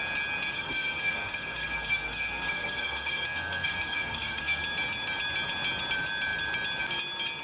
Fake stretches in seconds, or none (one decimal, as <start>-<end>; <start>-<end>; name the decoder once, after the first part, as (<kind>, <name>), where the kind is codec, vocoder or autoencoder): 0.5-4.6 (codec, SNAC)